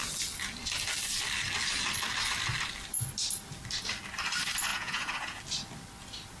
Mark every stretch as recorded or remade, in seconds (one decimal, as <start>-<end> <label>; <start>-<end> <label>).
0.0-4.7 recorded; 4.7-5.4 remade; 5.4-6.4 recorded